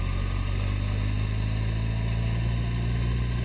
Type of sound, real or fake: real